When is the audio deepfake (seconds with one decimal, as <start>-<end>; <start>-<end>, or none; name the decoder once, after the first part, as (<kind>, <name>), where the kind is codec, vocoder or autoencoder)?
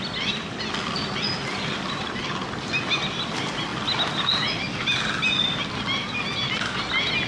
none